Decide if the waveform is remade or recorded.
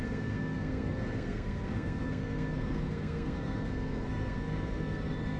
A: remade